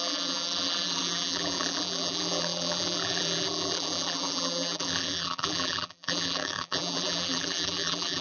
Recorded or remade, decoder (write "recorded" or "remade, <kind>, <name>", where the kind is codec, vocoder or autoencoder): remade, vocoder, BigVGAN v2